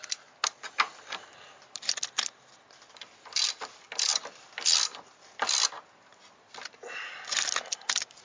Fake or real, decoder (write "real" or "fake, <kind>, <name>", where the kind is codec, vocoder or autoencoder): real